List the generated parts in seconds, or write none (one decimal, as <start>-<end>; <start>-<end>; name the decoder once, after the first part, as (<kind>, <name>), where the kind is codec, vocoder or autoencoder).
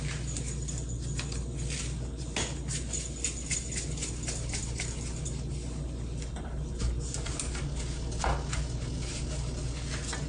none